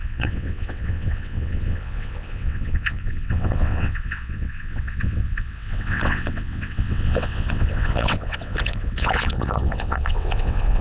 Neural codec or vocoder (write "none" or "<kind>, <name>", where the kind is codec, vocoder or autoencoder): vocoder, WaveNeXt